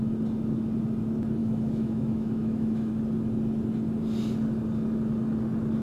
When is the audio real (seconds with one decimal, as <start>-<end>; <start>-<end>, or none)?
0.0-1.4; 2.9-5.8